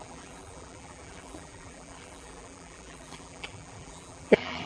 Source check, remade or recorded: remade